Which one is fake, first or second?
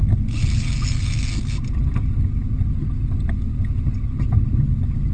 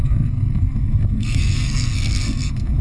second